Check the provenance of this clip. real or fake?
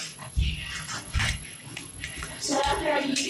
fake